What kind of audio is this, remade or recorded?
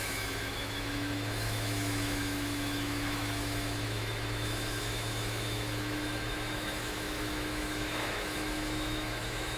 remade